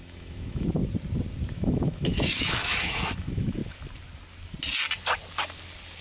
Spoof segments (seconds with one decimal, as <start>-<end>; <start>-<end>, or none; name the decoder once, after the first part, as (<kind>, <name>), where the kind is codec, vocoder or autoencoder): 0.0-0.8 (autoencoder, DAC-VAE); 1.5-3.6